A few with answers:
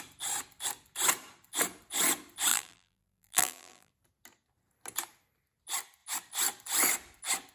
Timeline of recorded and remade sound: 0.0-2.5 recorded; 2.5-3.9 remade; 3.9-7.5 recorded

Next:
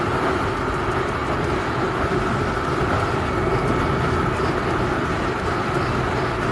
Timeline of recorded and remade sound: 0.0-6.5 recorded

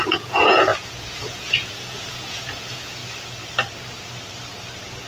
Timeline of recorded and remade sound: 0.0-3.0 remade; 3.0-5.1 recorded

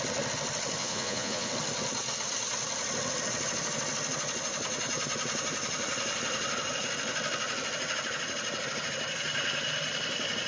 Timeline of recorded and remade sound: 0.0-0.8 recorded; 0.8-1.5 remade; 1.5-10.5 recorded

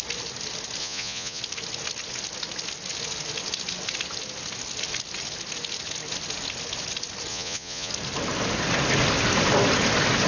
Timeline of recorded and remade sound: 0.0-0.8 recorded; 0.8-1.4 remade; 1.4-7.3 recorded; 7.3-7.9 remade; 7.9-10.3 recorded

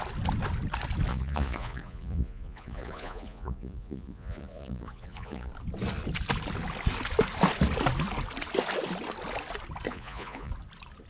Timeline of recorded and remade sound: 0.0-1.1 recorded; 1.1-5.5 remade; 5.5-9.9 recorded; 9.9-10.5 remade; 10.5-11.1 recorded

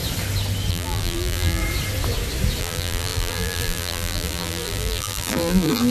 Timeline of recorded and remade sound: 0.0-0.7 recorded; 0.7-1.6 remade; 1.6-2.6 recorded; 2.6-5.9 remade